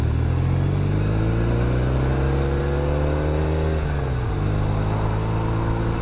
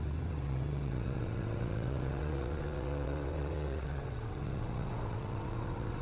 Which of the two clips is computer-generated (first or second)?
second